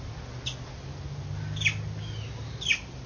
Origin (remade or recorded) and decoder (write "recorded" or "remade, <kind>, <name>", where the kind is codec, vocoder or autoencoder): recorded